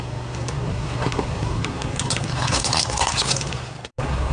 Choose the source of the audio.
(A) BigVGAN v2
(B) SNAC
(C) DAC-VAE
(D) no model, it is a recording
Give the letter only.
B